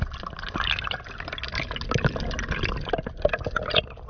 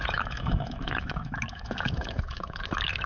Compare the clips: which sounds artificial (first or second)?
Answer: second